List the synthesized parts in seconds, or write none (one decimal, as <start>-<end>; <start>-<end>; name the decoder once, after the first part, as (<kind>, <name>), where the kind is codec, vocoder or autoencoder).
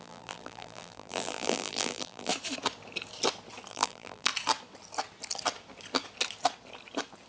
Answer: 0.0-2.3 (vocoder, BigVGAN v2); 3.7-4.3